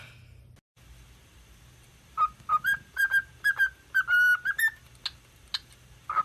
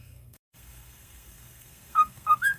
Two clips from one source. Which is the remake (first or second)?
second